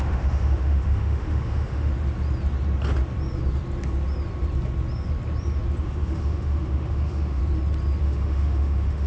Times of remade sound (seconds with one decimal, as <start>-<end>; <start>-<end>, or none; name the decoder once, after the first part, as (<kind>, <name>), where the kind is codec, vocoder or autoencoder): 0.0-1.9 (autoencoder, DAC-VAE); 5.8-7.4; 8.0-9.1